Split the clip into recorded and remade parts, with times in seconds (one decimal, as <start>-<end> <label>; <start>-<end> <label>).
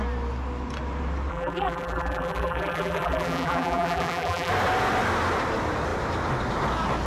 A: 0.0-1.3 recorded; 1.3-4.5 remade; 4.5-7.1 recorded